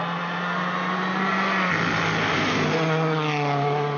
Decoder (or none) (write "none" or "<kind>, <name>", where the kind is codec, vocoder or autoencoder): none